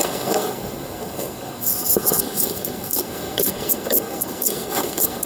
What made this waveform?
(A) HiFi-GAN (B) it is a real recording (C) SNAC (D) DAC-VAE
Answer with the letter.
C